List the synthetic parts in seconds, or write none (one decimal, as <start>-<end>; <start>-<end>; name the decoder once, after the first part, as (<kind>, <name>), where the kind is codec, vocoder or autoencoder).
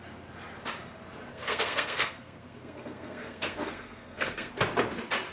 1.3-4.5 (codec, SNAC)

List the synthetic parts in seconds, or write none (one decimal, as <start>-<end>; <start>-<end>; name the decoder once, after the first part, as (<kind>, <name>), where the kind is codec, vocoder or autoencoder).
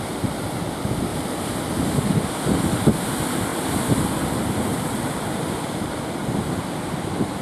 3.5-6.0 (vocoder, BigVGAN v2)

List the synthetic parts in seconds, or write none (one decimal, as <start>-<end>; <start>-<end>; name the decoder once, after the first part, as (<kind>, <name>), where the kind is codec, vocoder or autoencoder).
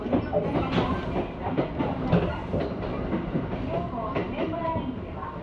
4.2-4.8 (vocoder, BigVGAN v2)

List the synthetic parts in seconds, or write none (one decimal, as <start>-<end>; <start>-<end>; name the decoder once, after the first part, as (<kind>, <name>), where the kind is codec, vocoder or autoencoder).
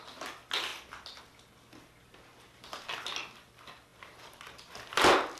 0.7-1.2 (vocoder, BigVGAN v2)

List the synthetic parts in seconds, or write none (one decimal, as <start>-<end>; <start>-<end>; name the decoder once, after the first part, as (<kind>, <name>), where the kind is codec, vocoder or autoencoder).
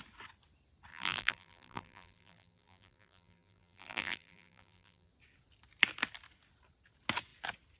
0.9-5.1 (vocoder, BigVGAN v2)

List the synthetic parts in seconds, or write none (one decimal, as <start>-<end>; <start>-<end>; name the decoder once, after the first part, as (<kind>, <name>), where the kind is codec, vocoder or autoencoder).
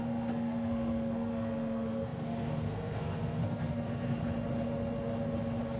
0.0-4.2 (codec, SNAC)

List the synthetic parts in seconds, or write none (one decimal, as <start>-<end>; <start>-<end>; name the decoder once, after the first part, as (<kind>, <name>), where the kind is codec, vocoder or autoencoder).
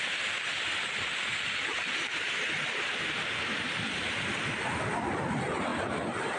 5.7-6.4 (vocoder, BigVGAN v2)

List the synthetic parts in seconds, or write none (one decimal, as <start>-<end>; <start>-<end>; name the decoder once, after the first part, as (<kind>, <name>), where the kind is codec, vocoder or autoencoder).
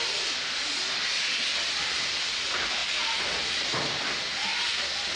none